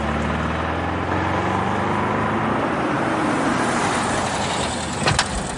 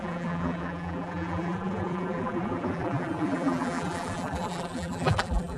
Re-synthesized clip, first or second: second